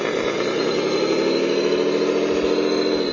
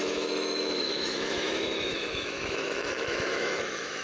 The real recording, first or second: first